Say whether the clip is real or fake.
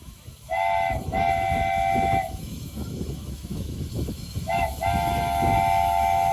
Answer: fake